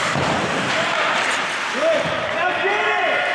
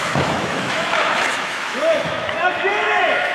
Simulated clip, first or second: second